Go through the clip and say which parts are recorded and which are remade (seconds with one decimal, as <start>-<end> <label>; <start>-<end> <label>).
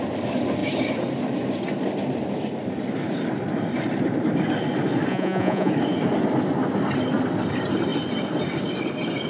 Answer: 0.0-5.1 recorded; 5.1-5.7 remade; 5.7-9.3 recorded